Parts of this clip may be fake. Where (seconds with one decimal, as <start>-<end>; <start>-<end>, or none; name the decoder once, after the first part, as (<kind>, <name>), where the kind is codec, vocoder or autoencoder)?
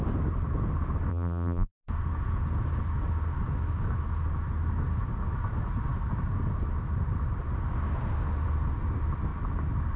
1.1-1.7 (vocoder, BigVGAN v2)